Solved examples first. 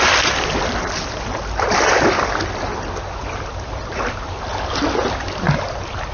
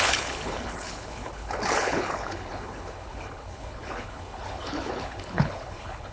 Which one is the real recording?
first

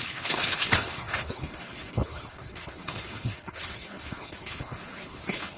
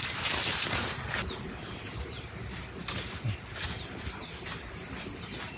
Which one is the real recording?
second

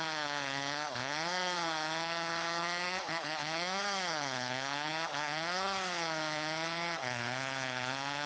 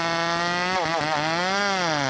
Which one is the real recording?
second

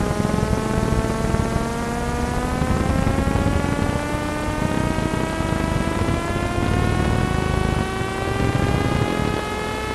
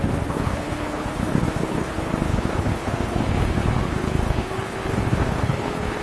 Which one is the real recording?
first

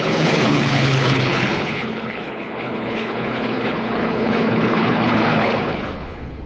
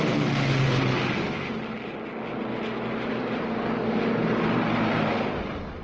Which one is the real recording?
second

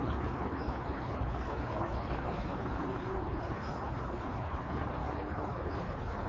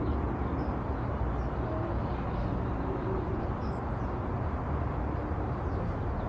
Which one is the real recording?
second